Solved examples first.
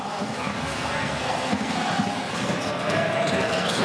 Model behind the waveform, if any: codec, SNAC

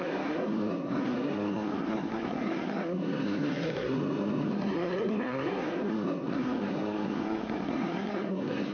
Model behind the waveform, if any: codec, SNAC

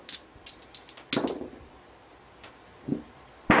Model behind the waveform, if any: none